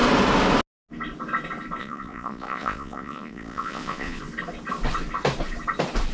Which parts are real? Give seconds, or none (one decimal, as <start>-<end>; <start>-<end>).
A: 0.0-1.8; 4.2-6.1